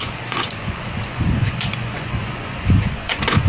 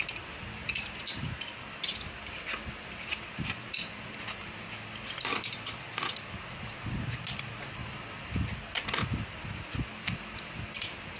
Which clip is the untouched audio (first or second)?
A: second